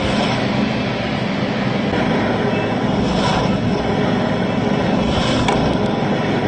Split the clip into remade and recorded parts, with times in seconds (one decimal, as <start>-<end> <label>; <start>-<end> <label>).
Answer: 0.0-6.5 recorded